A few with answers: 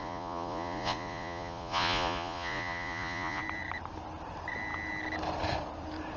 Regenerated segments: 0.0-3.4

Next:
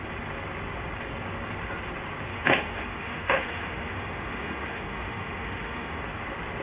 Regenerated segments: 2.3-6.0

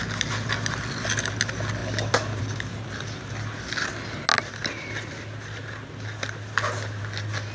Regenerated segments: none

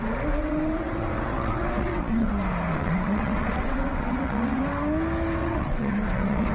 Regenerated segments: 0.4-2.3; 2.7-4.6; 5.4-6.5

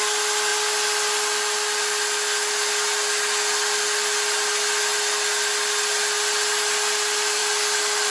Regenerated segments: none